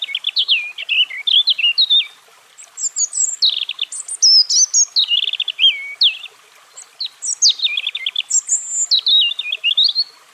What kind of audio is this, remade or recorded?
recorded